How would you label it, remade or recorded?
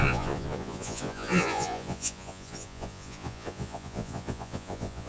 remade